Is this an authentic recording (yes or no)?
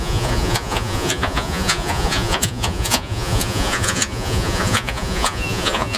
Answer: no